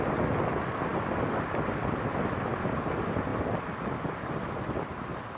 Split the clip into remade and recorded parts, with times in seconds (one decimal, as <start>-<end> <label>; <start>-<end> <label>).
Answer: 0.0-5.4 recorded